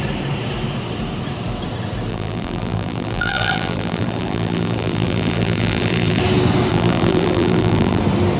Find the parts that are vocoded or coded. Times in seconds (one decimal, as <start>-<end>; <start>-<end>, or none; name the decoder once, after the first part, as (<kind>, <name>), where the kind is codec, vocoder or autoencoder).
2.1-6.2 (vocoder, BigVGAN v2); 6.7-8.0